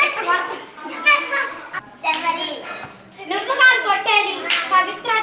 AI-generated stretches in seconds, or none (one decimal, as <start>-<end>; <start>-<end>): none